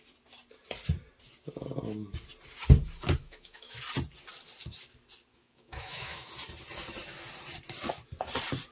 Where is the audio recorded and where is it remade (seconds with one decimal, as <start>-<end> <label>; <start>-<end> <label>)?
0.0-3.2 recorded; 3.2-3.8 remade; 3.8-5.3 recorded; 5.3-6.3 remade; 6.3-8.7 recorded